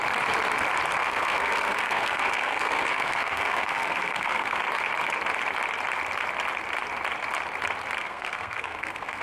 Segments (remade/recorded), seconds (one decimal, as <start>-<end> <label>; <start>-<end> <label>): 0.0-1.0 recorded; 1.0-4.6 remade; 4.6-8.0 recorded; 8.0-9.2 remade